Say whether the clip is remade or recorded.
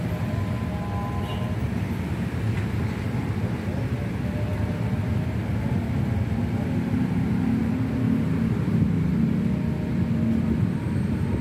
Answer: recorded